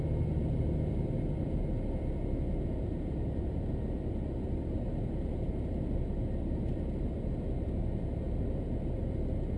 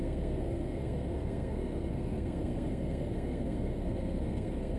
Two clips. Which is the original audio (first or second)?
first